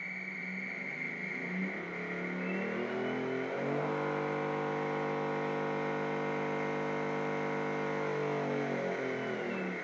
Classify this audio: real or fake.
real